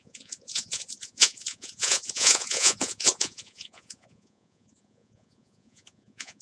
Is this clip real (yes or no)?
no